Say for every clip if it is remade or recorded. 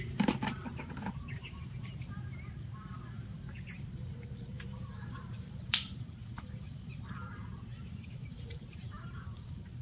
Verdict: remade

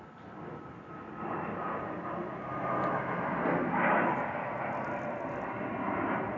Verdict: recorded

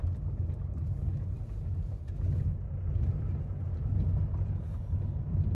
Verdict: recorded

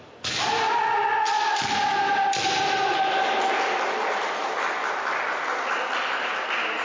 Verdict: recorded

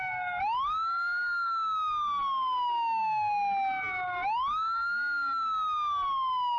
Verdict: recorded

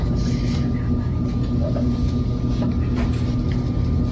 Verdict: recorded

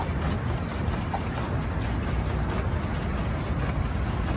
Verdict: recorded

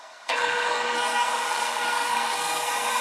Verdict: remade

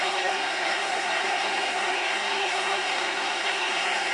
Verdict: remade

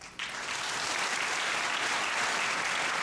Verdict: recorded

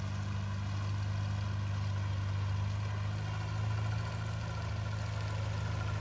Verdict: recorded